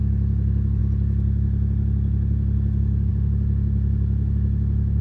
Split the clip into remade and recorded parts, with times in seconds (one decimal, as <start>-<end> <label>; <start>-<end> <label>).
0.0-5.0 recorded